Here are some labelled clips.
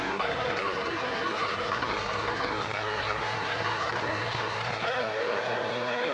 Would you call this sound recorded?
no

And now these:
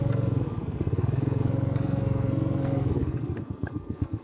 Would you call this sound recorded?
no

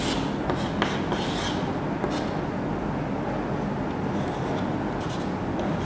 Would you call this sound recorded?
yes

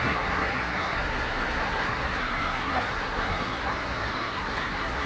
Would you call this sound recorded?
no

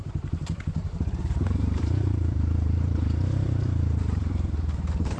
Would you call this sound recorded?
no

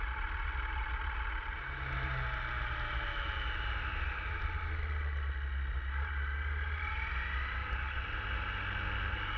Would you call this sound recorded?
yes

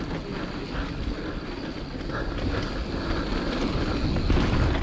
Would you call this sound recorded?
yes